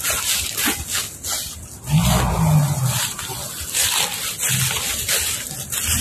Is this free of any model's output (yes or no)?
yes